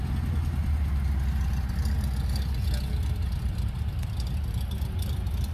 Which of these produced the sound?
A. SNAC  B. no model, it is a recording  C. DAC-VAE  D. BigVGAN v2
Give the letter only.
B